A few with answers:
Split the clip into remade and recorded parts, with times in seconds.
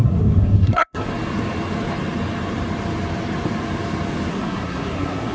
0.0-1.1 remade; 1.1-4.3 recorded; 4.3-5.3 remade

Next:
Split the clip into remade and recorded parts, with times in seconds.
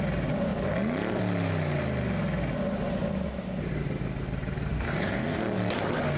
0.0-4.7 recorded; 4.7-5.4 remade; 5.4-6.2 recorded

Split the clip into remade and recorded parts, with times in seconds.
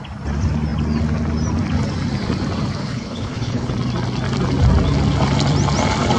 0.0-2.8 recorded; 2.8-3.7 remade; 3.7-6.2 recorded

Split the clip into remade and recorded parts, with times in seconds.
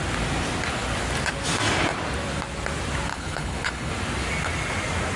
0.0-3.1 recorded; 3.1-3.9 remade; 3.9-5.2 recorded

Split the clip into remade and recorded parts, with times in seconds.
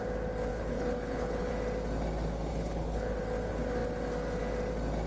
0.0-0.5 recorded; 0.5-1.5 remade; 1.5-2.5 recorded; 2.5-3.2 remade; 3.2-5.1 recorded